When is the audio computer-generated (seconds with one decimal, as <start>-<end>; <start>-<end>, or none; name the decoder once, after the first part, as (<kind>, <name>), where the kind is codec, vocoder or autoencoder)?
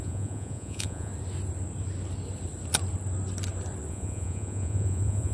0.0-1.1 (vocoder, Vocos); 3.9-5.3